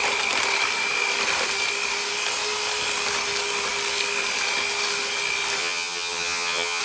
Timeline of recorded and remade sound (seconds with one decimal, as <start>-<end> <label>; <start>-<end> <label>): 0.0-5.6 recorded; 5.6-6.8 remade